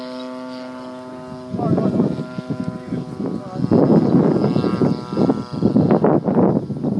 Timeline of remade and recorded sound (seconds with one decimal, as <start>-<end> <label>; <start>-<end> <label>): 0.0-4.7 recorded; 4.7-5.2 remade; 5.2-7.0 recorded

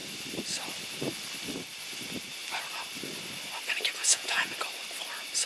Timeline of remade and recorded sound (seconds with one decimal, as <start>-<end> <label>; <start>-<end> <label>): 0.0-4.0 recorded; 4.0-4.5 remade; 4.5-5.5 recorded